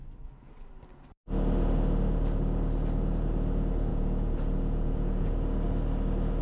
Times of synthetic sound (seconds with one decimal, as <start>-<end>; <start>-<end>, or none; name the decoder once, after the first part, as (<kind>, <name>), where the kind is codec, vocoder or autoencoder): 3.9-5.3 (vocoder, Vocos)